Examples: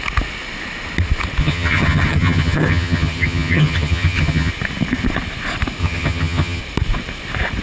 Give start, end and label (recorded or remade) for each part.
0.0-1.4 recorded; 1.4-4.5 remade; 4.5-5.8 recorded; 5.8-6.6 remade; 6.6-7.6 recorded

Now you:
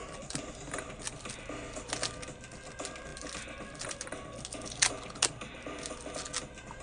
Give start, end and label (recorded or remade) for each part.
0.0-1.4 remade; 1.4-6.8 recorded